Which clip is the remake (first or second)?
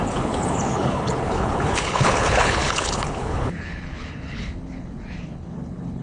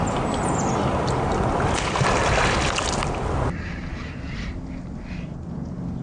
first